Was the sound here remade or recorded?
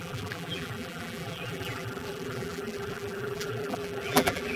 remade